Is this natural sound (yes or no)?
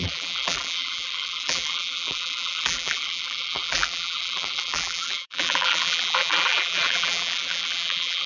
no